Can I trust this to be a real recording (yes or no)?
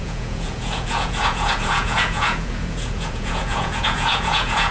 no